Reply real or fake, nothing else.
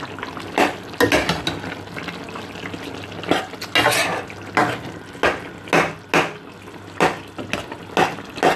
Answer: real